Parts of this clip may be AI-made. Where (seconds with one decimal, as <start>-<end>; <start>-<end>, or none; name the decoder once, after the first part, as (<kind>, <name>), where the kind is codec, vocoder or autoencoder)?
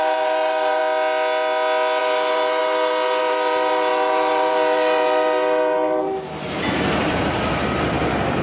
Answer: 0.0-0.8 (vocoder, BigVGAN v2); 2.0-8.4